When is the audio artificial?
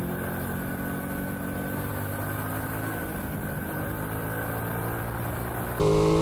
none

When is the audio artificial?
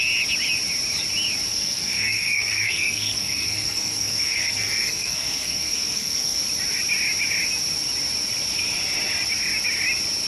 1.5-6.4 (codec, SNAC)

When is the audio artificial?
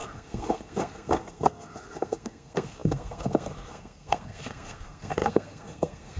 0.0-6.2 (codec, SNAC)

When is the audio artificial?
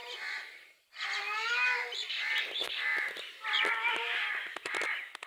none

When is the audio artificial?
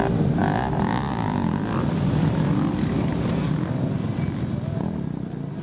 none